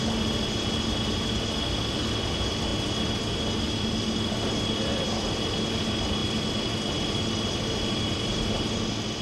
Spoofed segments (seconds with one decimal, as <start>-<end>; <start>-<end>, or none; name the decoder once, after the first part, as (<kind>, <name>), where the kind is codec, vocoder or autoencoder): none